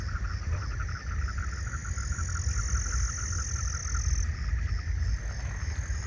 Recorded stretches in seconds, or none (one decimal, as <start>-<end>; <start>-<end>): 0.0-6.1